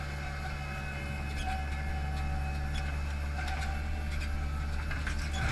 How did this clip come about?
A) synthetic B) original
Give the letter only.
B